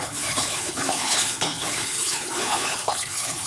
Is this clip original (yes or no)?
no